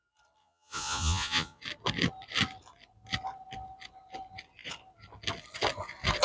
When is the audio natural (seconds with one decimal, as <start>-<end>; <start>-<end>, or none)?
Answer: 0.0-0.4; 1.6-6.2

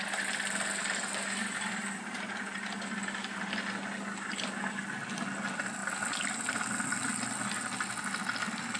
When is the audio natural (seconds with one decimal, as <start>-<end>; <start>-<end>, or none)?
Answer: 0.0-8.8

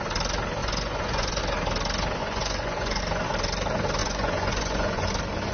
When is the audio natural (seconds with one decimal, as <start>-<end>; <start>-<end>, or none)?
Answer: 0.0-0.6; 1.4-2.2; 3.0-4.0; 5.1-5.5

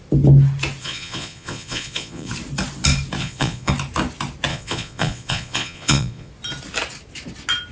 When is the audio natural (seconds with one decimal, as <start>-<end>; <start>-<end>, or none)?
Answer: 0.0-0.8; 2.3-3.2; 3.7-4.5; 6.3-7.7

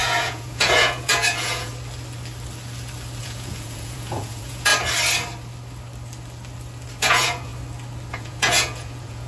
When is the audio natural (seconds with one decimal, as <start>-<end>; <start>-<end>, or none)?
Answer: 1.7-3.2; 4.7-7.0; 7.5-8.1

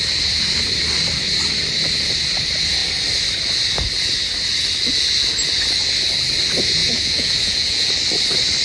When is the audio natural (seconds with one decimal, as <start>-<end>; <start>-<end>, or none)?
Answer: 0.0-6.8; 7.9-8.6